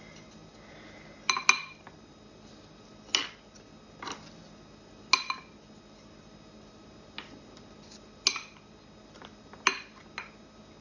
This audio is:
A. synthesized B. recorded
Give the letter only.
B